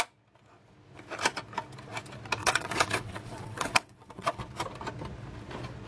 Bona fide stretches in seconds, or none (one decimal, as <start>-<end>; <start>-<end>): 0.0-2.4; 4.4-5.9